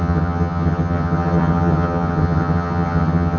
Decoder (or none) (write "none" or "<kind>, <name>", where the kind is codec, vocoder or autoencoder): vocoder, HiFi-GAN